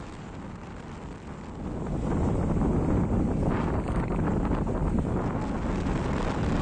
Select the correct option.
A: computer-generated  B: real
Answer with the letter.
B